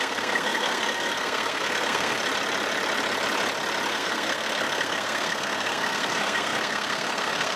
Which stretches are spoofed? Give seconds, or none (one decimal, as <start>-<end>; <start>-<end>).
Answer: 0.0-2.2; 3.9-7.6